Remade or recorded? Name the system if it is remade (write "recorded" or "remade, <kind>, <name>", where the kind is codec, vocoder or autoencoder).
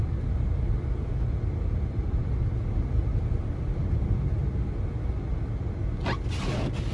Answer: recorded